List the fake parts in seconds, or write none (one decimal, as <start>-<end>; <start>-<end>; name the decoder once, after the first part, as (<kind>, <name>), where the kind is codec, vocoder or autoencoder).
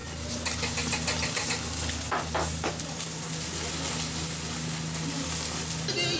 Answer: none